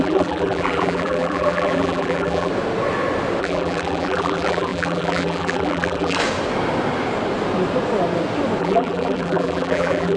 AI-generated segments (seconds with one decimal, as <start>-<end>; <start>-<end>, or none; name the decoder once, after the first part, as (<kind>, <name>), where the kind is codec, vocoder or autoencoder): 0.0-2.5 (vocoder, BigVGAN v2); 3.4-6.2; 8.6-10.2